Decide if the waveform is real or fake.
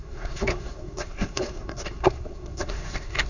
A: fake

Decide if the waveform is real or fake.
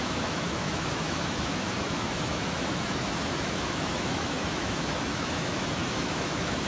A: fake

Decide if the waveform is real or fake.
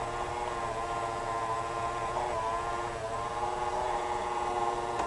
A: fake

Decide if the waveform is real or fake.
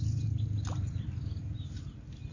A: real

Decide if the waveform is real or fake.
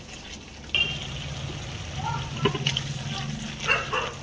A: real